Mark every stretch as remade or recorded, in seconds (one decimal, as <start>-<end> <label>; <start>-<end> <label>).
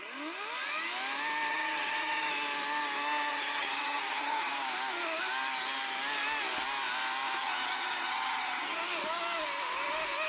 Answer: 0.0-1.5 recorded; 1.5-2.3 remade; 2.3-3.3 recorded; 3.3-4.5 remade; 4.5-7.4 recorded; 7.4-8.8 remade; 8.8-10.3 recorded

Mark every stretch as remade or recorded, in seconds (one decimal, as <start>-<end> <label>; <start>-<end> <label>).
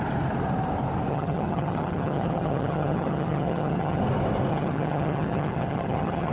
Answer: 0.0-1.1 recorded; 1.1-4.0 remade; 4.0-4.5 recorded; 4.5-6.3 remade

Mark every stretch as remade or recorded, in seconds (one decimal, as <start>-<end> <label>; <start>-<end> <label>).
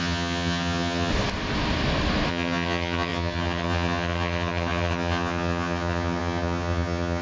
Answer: 0.0-1.1 remade; 1.1-2.3 recorded; 2.3-7.2 remade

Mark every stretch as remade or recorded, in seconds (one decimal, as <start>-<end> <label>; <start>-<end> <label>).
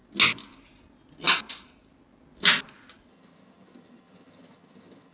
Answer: 0.0-3.1 recorded; 3.1-5.1 remade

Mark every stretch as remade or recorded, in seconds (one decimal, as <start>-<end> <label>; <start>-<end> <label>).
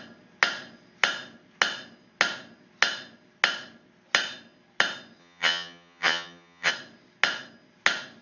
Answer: 0.0-5.2 recorded; 5.2-6.7 remade; 6.7-8.2 recorded